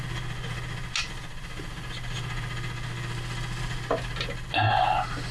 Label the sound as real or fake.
real